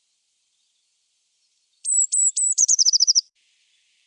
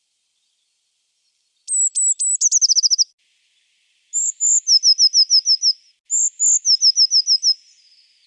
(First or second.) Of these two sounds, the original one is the second